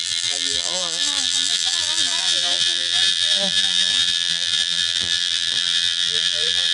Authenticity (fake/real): fake